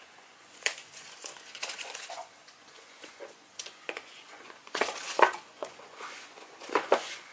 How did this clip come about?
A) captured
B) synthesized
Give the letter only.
B